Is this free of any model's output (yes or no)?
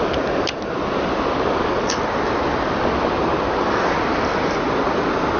yes